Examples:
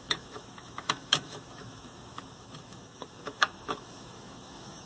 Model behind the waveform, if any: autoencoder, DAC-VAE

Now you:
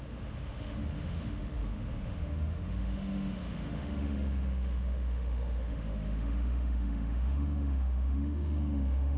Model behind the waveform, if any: autoencoder, DAC-VAE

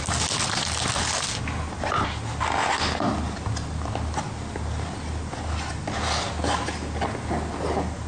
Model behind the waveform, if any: none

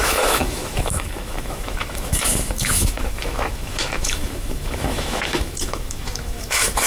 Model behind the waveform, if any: autoencoder, DAC-VAE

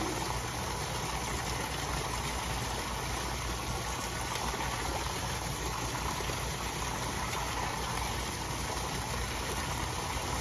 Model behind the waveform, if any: none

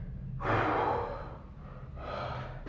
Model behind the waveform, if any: none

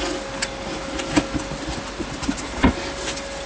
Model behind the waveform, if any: none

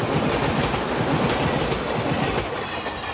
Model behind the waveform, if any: none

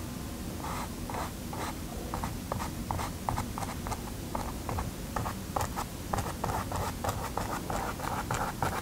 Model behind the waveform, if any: none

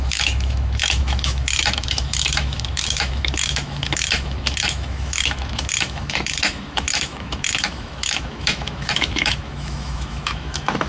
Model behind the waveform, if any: autoencoder, DAC-VAE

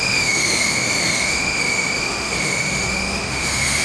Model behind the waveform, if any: autoencoder, DAC-VAE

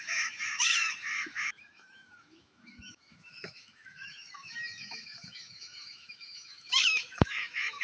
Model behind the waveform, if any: autoencoder, DAC-VAE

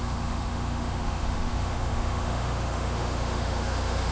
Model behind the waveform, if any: autoencoder, DAC-VAE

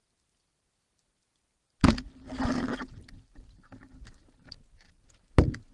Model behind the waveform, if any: none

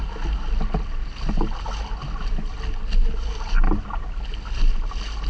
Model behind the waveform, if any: none